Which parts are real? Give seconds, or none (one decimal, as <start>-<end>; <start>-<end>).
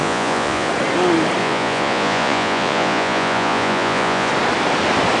0.7-1.4; 4.3-5.2